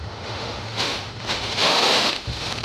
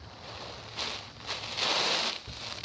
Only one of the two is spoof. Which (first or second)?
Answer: first